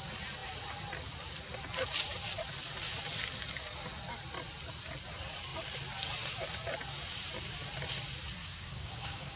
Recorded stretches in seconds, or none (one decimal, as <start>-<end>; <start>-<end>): 0.0-8.4